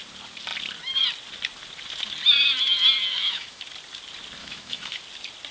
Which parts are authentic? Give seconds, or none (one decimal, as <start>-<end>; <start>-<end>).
0.0-3.1; 3.6-4.4; 5.0-5.5